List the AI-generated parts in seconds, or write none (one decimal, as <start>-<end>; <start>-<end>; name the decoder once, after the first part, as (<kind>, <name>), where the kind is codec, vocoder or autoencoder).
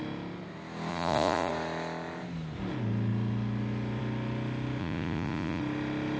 0.9-1.5 (vocoder, Vocos); 4.8-5.6